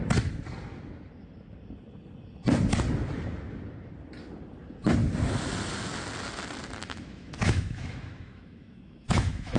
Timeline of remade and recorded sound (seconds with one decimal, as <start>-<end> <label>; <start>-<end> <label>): 0.0-6.8 recorded; 6.8-9.6 remade